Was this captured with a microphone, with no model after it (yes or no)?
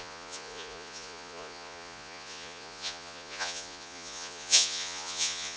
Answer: no